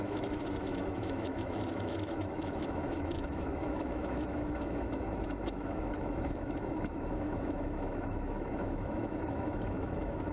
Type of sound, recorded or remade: remade